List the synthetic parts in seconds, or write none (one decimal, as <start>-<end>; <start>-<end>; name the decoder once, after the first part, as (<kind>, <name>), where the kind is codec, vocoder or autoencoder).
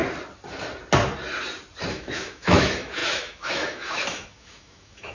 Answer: 1.9-5.1 (autoencoder, DAC-VAE)